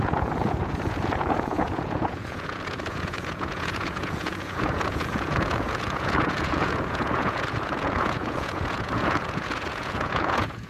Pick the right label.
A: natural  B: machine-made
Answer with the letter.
B